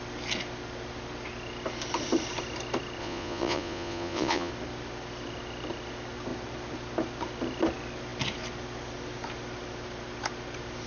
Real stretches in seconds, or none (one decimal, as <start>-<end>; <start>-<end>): 0.0-3.0; 4.5-10.9